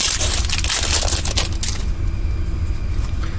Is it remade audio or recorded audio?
recorded